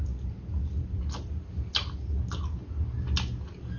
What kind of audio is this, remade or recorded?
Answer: recorded